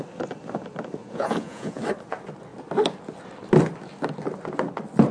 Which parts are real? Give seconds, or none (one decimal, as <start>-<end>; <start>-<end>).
0.0-1.0; 1.8-5.1